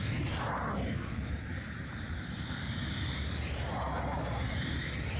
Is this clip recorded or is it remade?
remade